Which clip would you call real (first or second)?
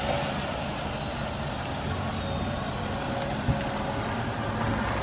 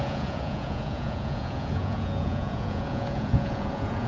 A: first